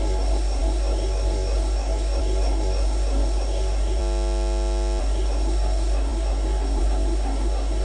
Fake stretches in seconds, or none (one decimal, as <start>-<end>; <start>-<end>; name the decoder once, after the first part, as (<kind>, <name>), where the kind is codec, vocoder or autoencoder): 0.0-4.0 (codec, SNAC); 5.0-7.8